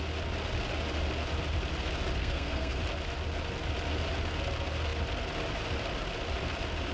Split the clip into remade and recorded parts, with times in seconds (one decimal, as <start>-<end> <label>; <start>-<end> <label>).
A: 0.0-2.2 recorded; 2.2-2.8 remade; 2.8-6.9 recorded